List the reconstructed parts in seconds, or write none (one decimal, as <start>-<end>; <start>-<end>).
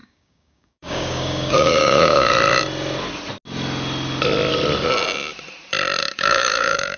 0.0-2.3; 6.0-7.0